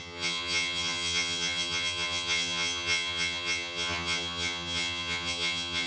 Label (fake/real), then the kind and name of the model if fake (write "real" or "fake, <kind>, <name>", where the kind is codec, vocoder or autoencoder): fake, vocoder, HiFi-GAN